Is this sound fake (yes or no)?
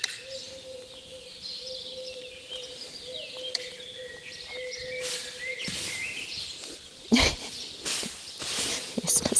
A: no